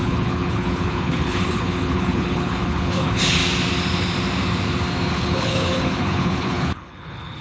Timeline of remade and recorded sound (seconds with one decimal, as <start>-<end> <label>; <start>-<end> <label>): 0.0-3.4 remade; 3.4-5.1 recorded; 5.1-7.4 remade